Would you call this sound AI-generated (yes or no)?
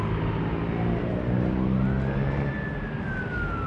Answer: no